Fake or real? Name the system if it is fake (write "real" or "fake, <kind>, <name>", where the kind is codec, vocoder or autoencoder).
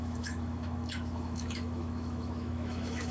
fake, autoencoder, DAC-VAE